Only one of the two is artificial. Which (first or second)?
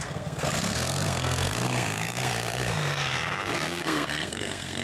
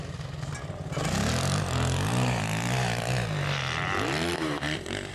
first